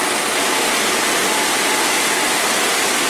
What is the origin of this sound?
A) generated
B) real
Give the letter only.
B